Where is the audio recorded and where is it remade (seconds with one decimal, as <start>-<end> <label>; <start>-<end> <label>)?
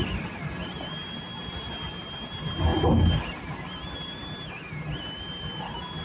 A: 0.0-6.0 recorded